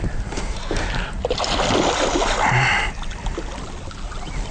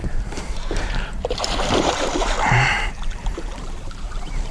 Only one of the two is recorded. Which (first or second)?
first